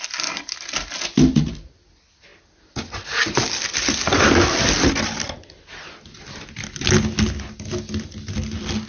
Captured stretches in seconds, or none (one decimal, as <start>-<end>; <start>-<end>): 0.0-8.9